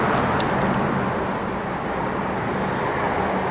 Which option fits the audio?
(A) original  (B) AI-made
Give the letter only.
A